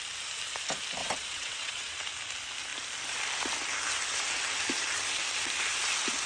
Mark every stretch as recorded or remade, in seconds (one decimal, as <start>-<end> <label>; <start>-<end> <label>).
0.0-1.0 recorded; 1.0-2.0 remade; 2.0-6.3 recorded